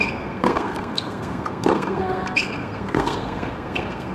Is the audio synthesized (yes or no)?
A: yes